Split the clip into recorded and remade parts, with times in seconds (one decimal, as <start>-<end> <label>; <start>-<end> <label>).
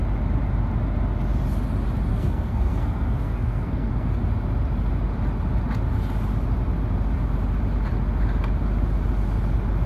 0.0-2.1 recorded; 2.1-4.2 remade; 4.2-9.9 recorded